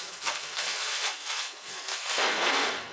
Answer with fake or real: fake